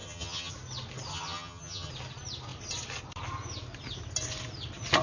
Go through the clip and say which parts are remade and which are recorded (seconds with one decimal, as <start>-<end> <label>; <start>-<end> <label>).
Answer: 0.0-0.5 remade; 0.5-1.1 recorded; 1.1-1.9 remade; 1.9-5.0 recorded